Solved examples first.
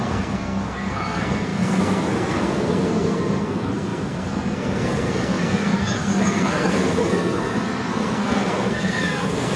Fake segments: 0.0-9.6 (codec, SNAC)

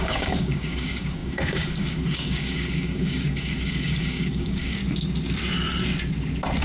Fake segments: 0.0-4.8 (codec, DAC)